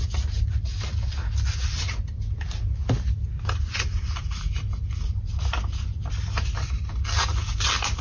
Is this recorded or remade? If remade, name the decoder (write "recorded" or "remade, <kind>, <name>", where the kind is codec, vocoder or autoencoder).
recorded